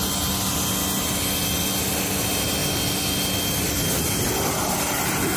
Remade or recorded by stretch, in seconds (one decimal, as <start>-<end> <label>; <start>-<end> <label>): 0.0-5.4 recorded